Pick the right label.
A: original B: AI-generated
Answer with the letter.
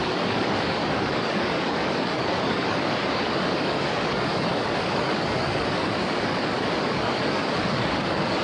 B